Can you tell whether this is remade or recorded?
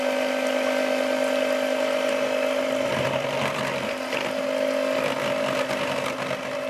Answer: recorded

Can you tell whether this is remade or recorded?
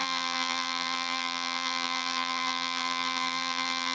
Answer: remade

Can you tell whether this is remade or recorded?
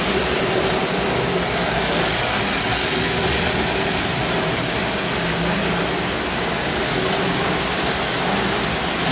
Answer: recorded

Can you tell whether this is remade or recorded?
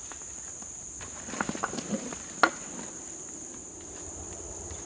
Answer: recorded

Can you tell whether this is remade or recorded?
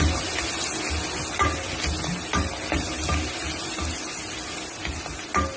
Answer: recorded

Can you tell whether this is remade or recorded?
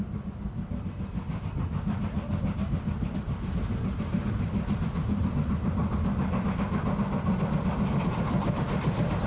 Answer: recorded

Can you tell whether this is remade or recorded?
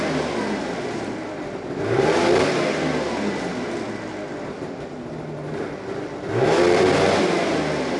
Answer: recorded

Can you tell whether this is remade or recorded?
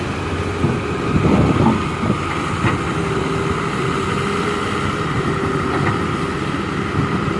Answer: recorded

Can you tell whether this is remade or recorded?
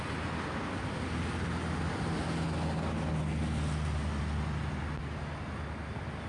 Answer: recorded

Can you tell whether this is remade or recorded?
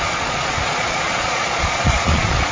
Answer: remade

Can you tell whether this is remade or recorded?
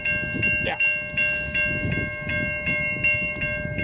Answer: recorded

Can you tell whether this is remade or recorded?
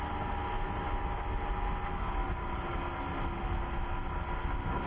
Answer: recorded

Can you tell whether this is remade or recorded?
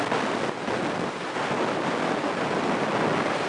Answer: recorded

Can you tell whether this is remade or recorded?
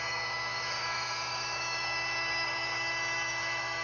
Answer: remade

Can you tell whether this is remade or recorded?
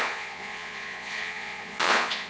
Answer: remade